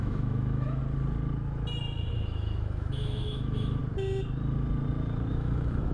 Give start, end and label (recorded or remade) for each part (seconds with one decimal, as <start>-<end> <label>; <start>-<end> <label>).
0.0-0.8 remade; 0.8-2.1 recorded; 2.1-3.8 remade; 3.8-5.3 recorded; 5.3-5.9 remade